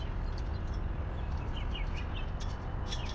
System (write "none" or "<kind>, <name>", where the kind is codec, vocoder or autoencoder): none